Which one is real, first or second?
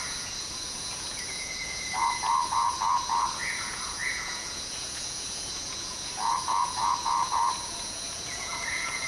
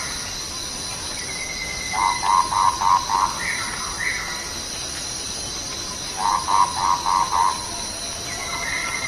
second